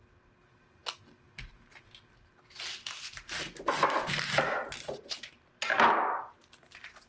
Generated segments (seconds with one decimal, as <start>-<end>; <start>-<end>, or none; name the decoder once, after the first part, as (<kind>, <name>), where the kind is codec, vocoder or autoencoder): none